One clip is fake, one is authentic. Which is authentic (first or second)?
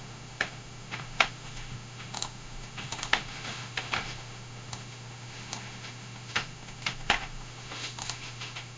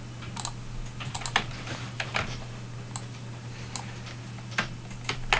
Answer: second